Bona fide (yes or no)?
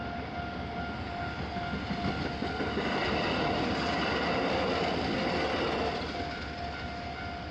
yes